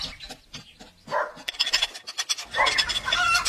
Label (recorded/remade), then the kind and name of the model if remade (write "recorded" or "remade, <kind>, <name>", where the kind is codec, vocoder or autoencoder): recorded